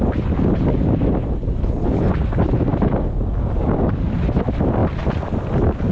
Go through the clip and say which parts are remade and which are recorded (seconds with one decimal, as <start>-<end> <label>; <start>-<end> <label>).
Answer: 0.0-1.6 recorded; 1.6-2.1 remade; 2.1-5.9 recorded